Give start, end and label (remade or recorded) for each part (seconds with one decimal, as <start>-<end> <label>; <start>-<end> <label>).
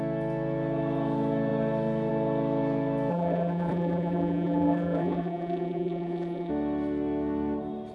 0.0-3.1 recorded; 3.1-6.5 remade; 6.5-7.9 recorded